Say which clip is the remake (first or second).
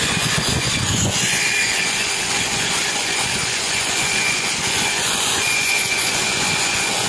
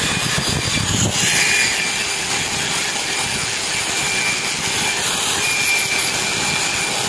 first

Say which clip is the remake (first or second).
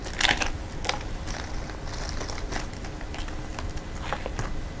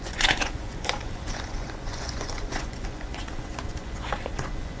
second